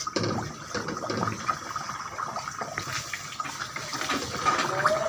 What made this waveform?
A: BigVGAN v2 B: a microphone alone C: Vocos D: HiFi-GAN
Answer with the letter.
B